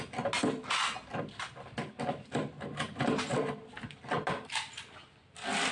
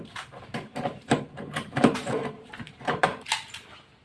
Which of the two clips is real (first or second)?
first